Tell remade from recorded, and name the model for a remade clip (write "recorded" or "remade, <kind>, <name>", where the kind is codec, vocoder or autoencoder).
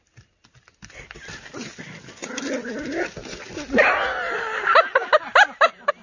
recorded